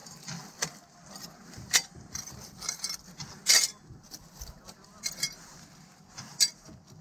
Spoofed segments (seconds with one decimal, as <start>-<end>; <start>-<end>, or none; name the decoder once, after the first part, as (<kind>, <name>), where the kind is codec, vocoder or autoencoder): 0.0-4.2 (vocoder, BigVGAN v2)